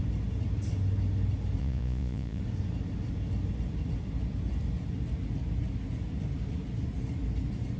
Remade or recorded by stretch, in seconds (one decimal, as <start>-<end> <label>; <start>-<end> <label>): 0.0-1.6 recorded; 1.6-2.4 remade; 2.4-7.8 recorded